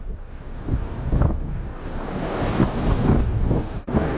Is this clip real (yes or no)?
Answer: no